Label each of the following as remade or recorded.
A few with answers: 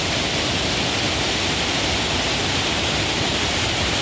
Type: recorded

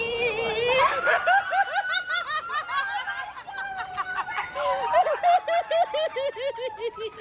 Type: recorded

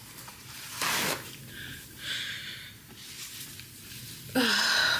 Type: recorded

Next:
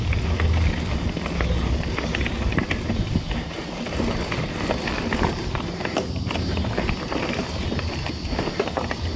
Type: recorded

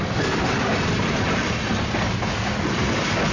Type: recorded